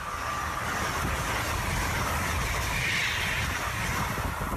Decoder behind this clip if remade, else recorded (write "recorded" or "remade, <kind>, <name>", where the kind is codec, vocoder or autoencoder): recorded